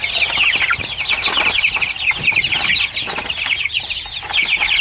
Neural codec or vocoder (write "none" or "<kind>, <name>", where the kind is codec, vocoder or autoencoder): none